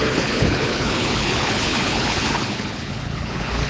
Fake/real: fake